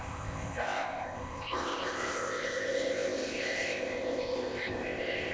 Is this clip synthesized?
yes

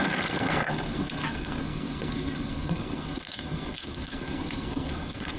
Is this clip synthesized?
yes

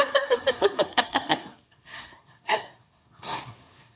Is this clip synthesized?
yes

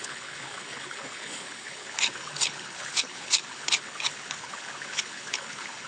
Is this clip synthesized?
yes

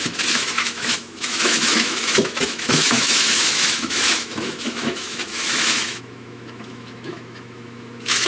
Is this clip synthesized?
yes